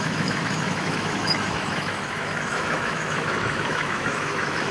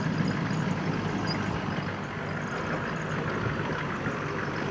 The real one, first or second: second